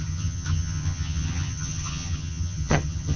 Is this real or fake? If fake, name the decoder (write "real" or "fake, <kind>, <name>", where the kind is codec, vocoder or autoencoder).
fake, vocoder, HiFi-GAN